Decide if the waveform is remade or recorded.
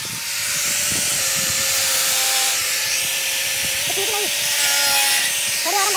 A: remade